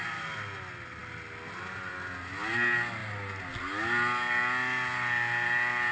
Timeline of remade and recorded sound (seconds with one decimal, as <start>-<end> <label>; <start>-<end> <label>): 0.0-5.9 recorded